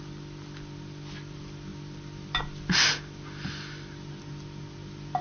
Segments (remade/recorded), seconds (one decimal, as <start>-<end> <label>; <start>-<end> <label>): 0.0-5.2 recorded